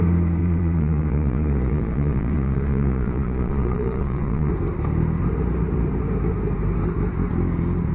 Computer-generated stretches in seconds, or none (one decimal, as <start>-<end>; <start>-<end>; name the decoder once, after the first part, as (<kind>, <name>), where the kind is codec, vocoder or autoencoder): 0.4-4.5 (vocoder, Vocos)